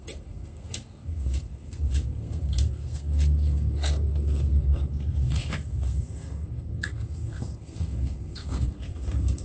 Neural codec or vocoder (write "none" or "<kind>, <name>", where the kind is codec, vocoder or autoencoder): codec, SNAC